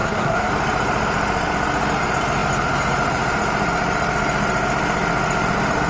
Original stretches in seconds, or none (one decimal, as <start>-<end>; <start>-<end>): 0.5-5.9